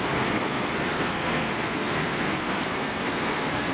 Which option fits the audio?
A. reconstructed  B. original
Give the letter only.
A